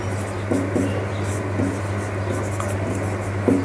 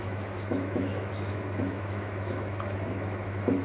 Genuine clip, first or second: first